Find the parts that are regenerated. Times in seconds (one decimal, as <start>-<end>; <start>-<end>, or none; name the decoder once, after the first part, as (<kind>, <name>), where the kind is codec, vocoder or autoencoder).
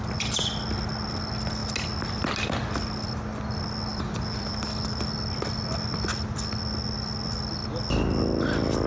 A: 3.9-5.0 (vocoder, BigVGAN v2)